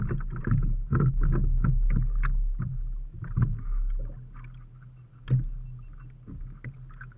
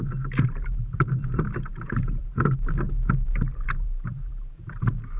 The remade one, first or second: second